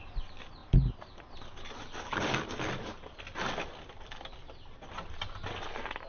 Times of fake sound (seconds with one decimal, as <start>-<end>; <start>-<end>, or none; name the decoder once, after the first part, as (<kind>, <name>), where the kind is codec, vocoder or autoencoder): none